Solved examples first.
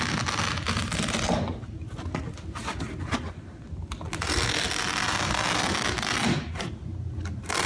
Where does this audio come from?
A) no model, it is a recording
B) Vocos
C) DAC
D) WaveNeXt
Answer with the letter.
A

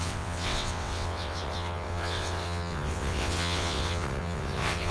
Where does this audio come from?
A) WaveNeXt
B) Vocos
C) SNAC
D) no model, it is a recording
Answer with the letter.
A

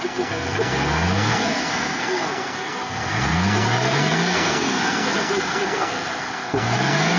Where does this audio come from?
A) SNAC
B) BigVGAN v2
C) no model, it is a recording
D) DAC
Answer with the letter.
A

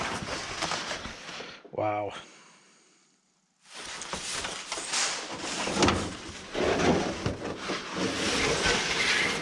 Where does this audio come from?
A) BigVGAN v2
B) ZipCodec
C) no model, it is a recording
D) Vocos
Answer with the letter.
C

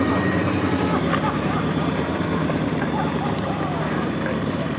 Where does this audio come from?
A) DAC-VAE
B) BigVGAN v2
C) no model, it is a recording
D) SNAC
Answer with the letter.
B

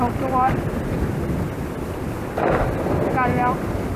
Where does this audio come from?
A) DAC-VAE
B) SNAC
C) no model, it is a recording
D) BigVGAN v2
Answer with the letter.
C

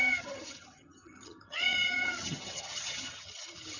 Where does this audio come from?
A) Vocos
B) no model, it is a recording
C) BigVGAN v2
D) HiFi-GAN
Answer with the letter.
D